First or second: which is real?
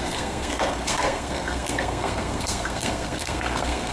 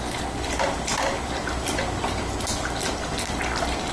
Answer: second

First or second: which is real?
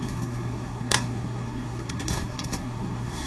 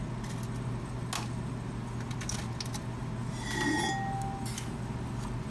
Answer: second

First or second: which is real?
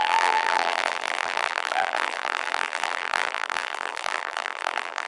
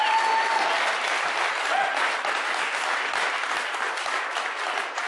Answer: second